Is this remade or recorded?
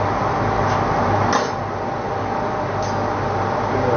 recorded